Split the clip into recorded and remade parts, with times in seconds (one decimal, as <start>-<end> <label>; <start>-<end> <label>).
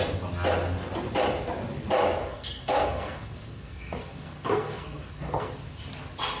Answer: 0.0-2.2 recorded; 2.2-5.5 remade; 5.5-6.4 recorded